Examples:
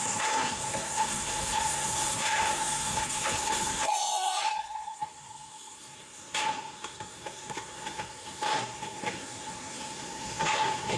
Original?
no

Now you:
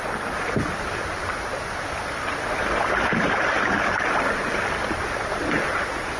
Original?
yes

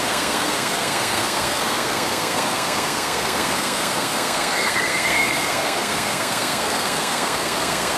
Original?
no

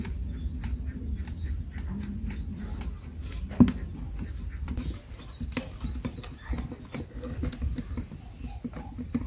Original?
yes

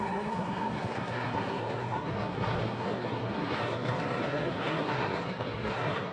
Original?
no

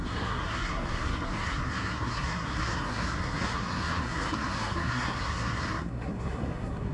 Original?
no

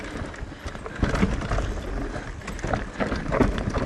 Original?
yes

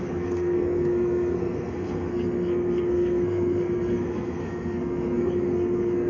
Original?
no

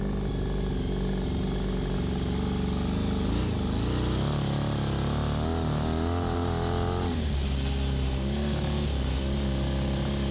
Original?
yes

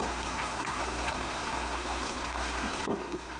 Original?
no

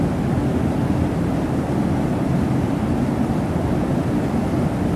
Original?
yes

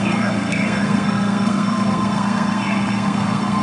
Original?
no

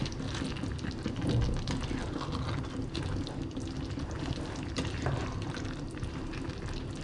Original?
yes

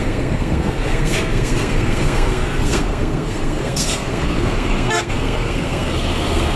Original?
no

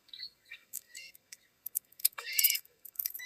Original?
no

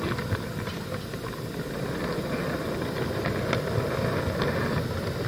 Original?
yes